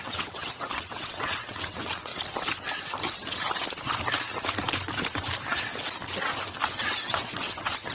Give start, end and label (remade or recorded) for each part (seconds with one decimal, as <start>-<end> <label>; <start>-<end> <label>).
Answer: 0.0-2.1 remade; 2.1-6.8 recorded; 6.8-7.9 remade